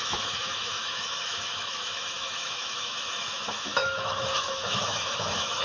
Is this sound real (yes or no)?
no